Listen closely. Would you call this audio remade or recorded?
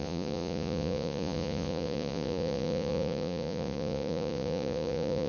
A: remade